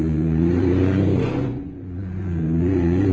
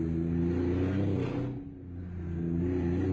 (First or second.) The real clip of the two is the second